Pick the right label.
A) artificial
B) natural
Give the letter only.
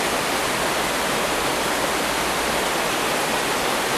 B